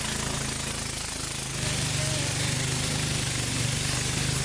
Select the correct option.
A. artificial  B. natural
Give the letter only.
B